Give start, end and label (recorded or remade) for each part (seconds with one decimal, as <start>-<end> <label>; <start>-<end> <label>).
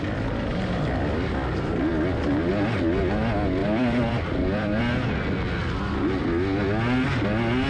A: 0.0-3.6 recorded; 3.6-4.8 remade; 4.8-7.7 recorded